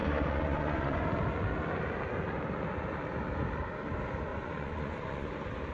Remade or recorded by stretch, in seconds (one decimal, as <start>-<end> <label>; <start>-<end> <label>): 0.0-1.0 remade; 1.0-4.3 recorded; 4.3-5.3 remade; 5.3-5.7 recorded